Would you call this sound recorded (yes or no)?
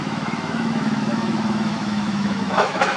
no